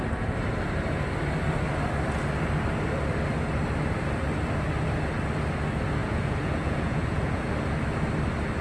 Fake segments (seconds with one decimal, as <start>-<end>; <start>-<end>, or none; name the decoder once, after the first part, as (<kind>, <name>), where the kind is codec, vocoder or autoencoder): 6.0-7.5 (vocoder, Vocos)